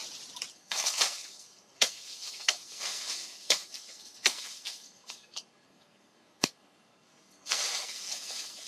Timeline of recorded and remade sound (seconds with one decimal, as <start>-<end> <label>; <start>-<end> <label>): 0.0-0.5 recorded; 0.5-8.7 remade